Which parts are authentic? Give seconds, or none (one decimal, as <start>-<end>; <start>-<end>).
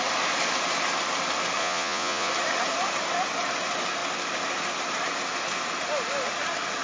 0.0-1.6; 2.3-6.8